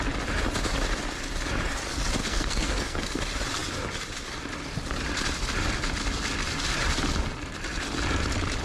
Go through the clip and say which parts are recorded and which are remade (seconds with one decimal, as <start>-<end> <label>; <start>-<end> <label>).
0.0-2.2 recorded; 2.2-3.2 remade; 3.2-8.6 recorded